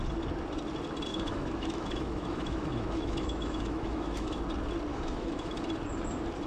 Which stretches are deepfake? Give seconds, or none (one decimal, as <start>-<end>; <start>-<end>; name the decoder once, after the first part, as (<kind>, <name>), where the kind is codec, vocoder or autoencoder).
1.1-4.4 (autoencoder, DAC-VAE); 4.9-5.5